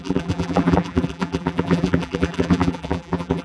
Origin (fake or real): fake